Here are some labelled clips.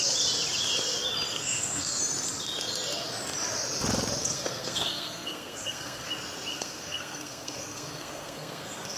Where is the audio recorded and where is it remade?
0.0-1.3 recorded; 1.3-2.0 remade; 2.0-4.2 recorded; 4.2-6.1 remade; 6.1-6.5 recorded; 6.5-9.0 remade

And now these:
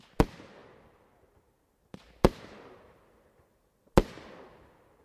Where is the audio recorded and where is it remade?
0.0-5.0 recorded

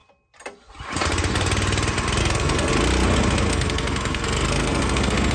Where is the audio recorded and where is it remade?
0.0-2.2 recorded; 2.2-2.7 remade; 2.7-3.5 recorded; 3.5-5.3 remade

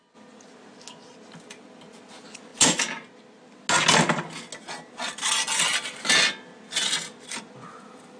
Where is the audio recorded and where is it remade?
0.0-8.2 recorded

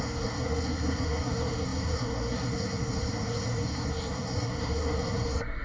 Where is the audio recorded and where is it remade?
0.0-5.6 remade

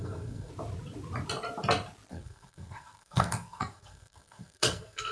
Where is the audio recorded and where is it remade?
0.0-0.5 remade; 0.5-2.1 recorded; 2.1-5.1 remade

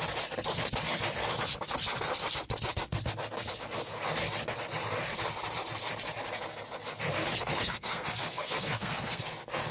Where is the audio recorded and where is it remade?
0.0-7.5 recorded; 7.5-9.2 remade; 9.2-9.7 recorded

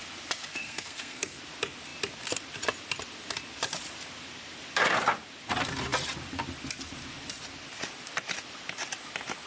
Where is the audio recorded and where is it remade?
0.0-0.5 recorded; 0.5-1.4 remade; 1.4-9.5 recorded